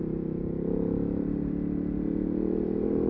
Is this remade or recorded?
remade